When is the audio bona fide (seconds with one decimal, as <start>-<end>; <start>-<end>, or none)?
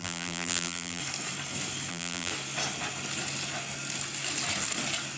1.0-1.9; 2.3-5.2